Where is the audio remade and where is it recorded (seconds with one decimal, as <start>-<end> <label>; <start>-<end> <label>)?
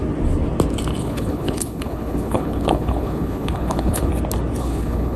0.0-1.0 recorded; 1.0-4.1 remade; 4.1-4.6 recorded; 4.6-5.2 remade